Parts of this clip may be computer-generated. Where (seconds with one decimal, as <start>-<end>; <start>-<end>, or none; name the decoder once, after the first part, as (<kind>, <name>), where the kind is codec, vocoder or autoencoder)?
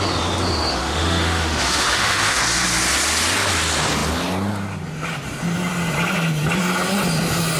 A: 0.7-2.4 (autoencoder, DAC-VAE)